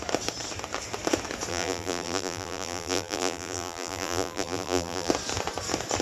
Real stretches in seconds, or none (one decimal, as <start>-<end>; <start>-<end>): 0.0-1.5; 5.1-6.0